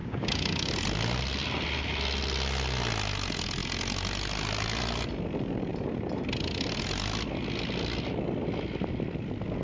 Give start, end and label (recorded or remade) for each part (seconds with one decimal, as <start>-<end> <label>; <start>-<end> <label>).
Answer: 0.0-0.7 remade; 0.7-9.6 recorded